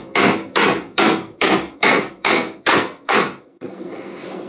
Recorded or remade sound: remade